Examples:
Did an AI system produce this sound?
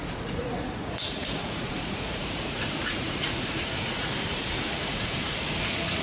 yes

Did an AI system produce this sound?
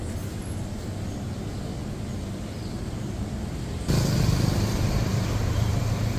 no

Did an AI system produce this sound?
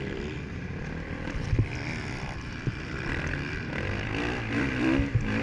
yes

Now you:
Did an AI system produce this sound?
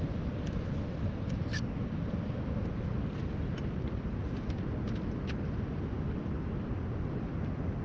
no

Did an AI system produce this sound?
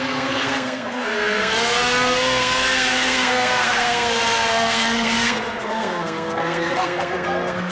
yes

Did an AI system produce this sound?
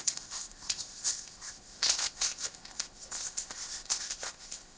yes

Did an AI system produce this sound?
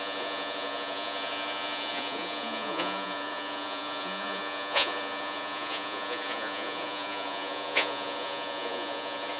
yes